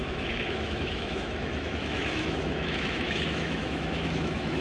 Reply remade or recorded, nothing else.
remade